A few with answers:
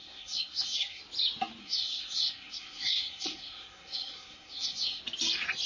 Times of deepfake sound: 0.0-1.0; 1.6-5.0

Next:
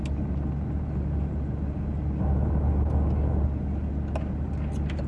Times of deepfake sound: none

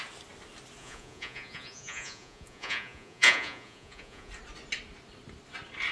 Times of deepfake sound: 0.8-4.3

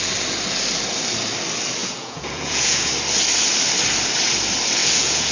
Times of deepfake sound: 1.8-2.9; 4.8-5.3

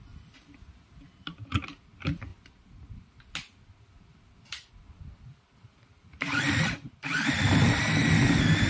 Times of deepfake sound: 5.3-7.8

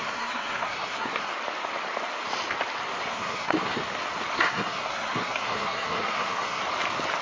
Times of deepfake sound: 0.0-1.3; 3.1-3.8; 4.3-6.6

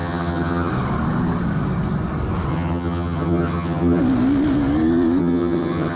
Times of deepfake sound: 0.0-0.7; 2.5-4.0; 5.2-6.0

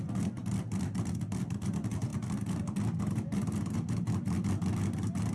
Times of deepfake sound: none